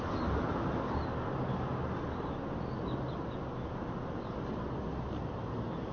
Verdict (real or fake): real